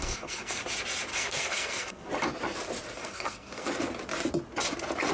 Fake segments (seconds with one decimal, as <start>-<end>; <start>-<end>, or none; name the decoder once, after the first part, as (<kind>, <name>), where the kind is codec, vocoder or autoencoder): 0.0-0.6 (codec, SNAC); 1.1-2.1; 3.0-3.7